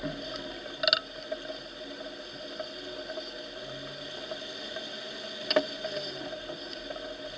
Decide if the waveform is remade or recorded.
recorded